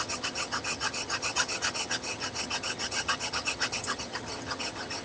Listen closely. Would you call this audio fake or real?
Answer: fake